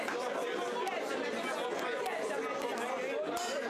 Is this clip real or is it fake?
real